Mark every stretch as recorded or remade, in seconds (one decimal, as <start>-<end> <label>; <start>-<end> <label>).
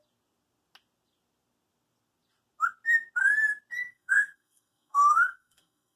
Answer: 0.0-3.8 recorded; 3.8-6.0 remade